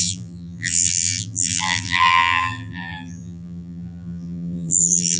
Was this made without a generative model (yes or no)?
no